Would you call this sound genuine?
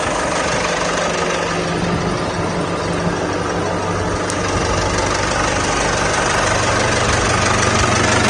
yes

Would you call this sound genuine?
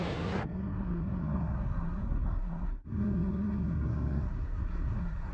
no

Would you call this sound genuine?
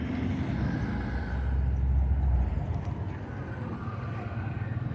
yes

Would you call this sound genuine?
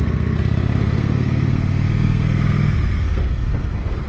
no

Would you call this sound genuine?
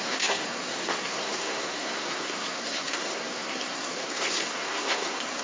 no